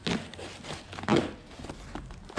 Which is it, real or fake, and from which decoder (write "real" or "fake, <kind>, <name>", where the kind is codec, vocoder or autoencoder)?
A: real